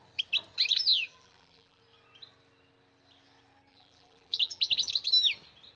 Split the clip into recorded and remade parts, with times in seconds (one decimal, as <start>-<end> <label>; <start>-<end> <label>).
0.0-0.9 recorded; 0.9-1.8 remade; 1.8-3.7 recorded; 3.7-4.9 remade; 4.9-5.8 recorded